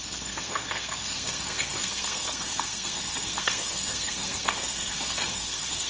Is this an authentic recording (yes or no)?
no